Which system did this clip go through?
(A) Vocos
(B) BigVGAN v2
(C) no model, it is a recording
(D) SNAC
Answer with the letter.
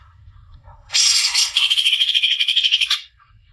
D